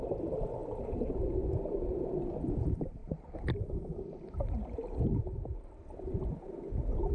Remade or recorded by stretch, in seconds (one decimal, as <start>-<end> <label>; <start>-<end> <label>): 0.0-0.6 recorded; 0.6-1.3 remade; 1.3-7.1 recorded